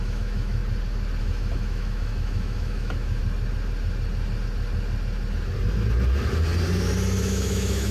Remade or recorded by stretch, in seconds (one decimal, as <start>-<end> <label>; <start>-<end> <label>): 0.0-0.6 remade; 0.6-1.2 recorded; 1.2-3.2 remade; 3.2-7.2 recorded; 7.2-7.9 remade